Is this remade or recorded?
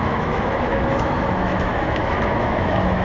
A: remade